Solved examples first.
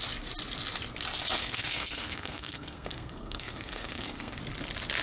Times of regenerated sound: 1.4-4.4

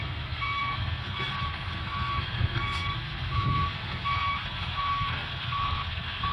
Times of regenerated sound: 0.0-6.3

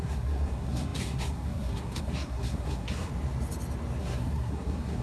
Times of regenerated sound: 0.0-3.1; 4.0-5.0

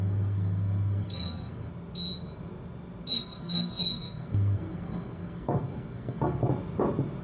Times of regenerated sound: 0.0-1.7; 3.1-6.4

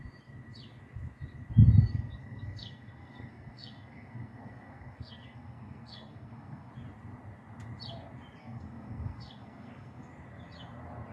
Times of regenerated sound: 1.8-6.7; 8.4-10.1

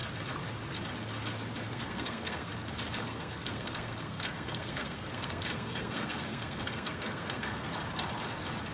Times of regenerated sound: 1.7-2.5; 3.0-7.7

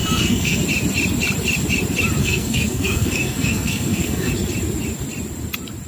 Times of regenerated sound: 0.0-0.6; 2.2-4.3